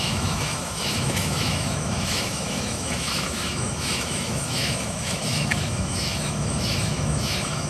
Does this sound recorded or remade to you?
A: remade